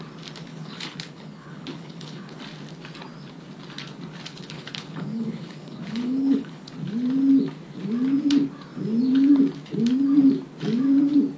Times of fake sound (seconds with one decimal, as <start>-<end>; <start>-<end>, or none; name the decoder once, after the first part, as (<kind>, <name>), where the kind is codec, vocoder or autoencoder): 0.5-2.4 (codec, HILCodec); 4.3-6.7